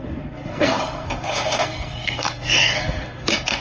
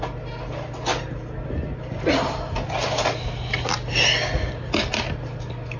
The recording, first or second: second